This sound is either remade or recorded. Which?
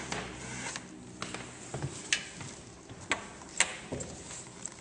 recorded